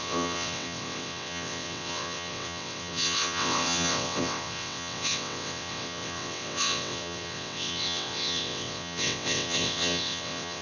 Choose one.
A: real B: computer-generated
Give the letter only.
B